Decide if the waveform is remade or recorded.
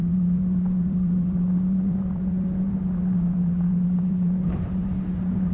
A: remade